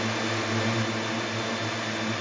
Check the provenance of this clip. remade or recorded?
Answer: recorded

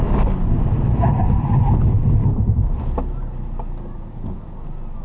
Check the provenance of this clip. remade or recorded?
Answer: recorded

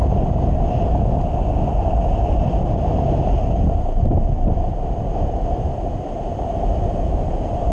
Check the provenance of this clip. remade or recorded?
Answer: recorded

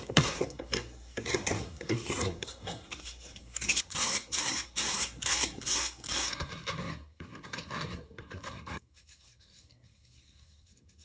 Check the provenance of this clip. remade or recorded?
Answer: remade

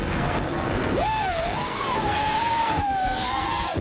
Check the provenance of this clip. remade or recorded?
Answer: remade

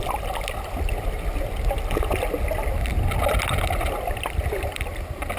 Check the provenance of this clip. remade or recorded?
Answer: recorded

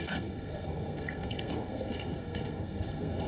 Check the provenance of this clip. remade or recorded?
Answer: remade